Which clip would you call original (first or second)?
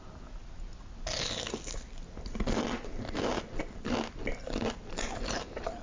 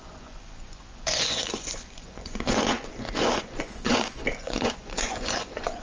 first